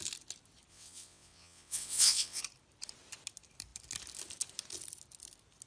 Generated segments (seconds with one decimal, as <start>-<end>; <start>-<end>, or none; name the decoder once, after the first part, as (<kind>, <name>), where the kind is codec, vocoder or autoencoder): 0.7-2.4 (vocoder, WaveNeXt)

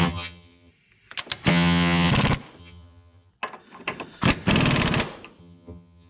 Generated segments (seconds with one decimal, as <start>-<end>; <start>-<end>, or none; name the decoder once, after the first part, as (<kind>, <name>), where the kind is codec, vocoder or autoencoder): 0.0-0.7 (vocoder, HiFi-GAN); 1.5-2.1; 2.6-3.3; 5.4-6.1

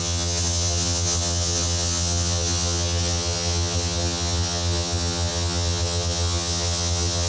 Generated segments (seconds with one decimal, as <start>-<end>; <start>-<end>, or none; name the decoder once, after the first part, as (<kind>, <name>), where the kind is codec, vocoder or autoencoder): 0.0-7.3 (vocoder, HiFi-GAN)

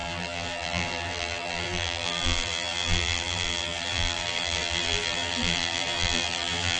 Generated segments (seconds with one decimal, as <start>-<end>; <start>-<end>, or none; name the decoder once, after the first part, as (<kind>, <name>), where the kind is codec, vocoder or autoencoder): 0.0-6.8 (vocoder, BigVGAN v2)

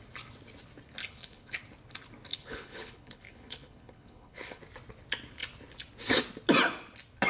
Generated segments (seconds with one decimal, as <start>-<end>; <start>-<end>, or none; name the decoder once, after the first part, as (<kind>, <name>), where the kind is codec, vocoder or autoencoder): 1.0-1.6 (codec, HILCodec); 2.3-4.6